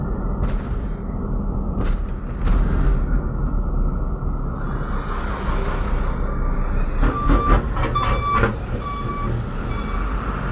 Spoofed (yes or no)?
no